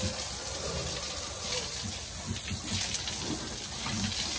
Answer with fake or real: real